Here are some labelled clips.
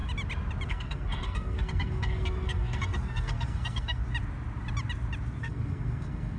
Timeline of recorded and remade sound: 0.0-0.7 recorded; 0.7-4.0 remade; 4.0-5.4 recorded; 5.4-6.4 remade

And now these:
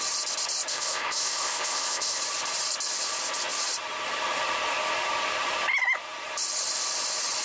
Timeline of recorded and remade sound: 0.0-0.7 recorded; 0.7-2.2 remade; 2.2-7.4 recorded

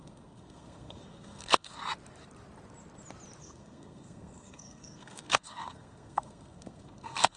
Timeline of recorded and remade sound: 0.0-1.8 remade; 1.8-3.4 recorded; 3.4-7.4 remade

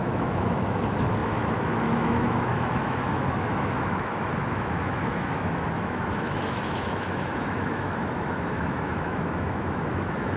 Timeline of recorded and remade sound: 0.0-10.4 remade

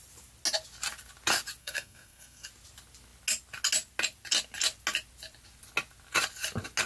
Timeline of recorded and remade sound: 0.0-1.6 recorded; 1.6-2.5 remade; 2.5-6.9 recorded

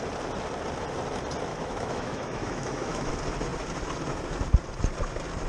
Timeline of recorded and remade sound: 0.0-1.5 recorded; 1.5-3.1 remade; 3.1-5.5 recorded